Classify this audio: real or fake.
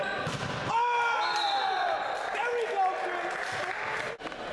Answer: real